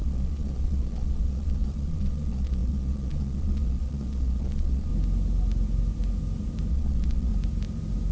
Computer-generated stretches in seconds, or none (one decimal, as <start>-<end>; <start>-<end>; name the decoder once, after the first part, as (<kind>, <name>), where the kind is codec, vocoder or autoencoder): 0.0-4.9 (vocoder, Vocos); 6.7-7.3